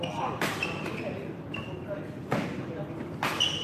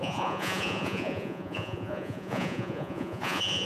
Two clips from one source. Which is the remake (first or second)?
second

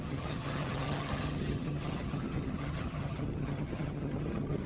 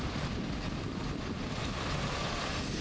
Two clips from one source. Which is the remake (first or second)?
first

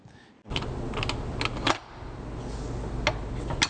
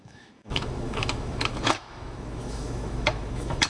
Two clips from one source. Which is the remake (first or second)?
second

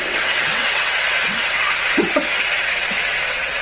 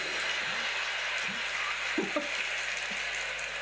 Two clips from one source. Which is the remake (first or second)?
first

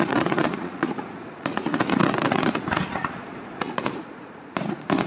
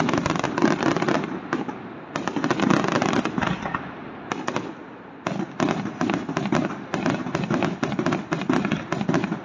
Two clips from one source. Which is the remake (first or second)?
first